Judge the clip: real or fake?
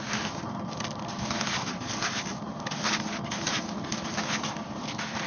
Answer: real